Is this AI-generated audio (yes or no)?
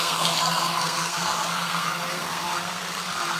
yes